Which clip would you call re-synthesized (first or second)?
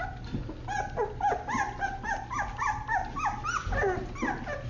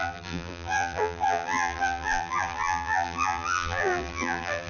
second